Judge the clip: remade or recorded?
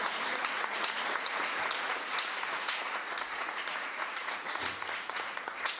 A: remade